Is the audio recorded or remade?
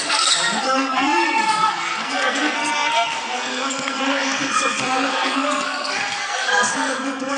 remade